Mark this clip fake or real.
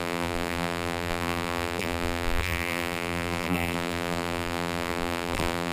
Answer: fake